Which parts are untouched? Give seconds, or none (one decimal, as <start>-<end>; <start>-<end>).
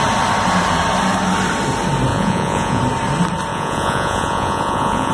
0.0-2.1; 2.8-3.5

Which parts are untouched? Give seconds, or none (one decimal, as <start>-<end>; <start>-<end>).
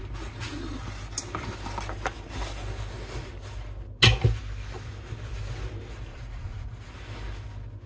0.0-6.1; 6.9-7.9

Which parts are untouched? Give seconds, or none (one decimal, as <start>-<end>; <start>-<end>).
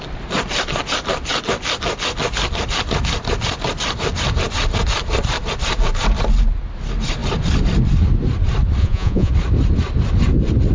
0.0-8.8; 9.3-10.7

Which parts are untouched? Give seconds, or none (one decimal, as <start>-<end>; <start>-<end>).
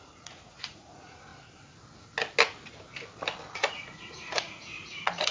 1.3-3.5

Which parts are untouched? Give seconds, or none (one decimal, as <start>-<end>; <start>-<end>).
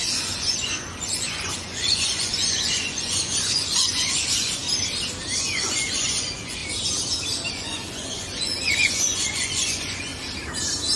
4.6-5.4; 6.6-7.5; 10.1-11.0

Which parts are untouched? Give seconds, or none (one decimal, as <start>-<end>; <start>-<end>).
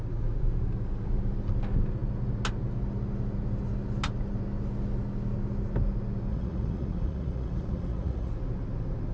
0.0-6.3; 8.3-9.1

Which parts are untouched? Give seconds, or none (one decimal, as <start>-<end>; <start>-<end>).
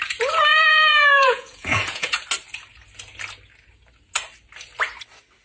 0.0-0.5; 2.2-5.4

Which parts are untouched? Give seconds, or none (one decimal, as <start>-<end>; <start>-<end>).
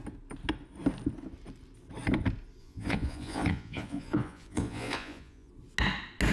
0.0-2.6; 5.5-6.3